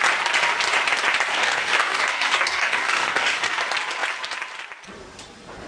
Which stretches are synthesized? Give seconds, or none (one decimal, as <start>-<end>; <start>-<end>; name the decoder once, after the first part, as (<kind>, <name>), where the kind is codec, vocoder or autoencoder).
1.3-3.6 (codec, DAC)